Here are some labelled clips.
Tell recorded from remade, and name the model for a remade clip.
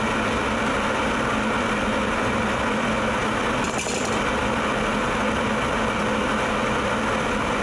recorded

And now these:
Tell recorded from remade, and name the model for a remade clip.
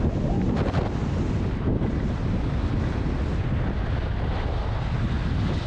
recorded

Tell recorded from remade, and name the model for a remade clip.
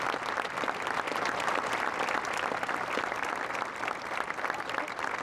recorded